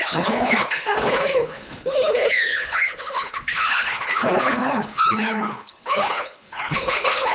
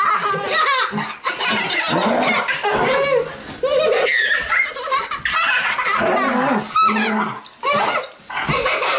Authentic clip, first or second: second